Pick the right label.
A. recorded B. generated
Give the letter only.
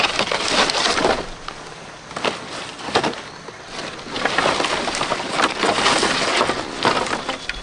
A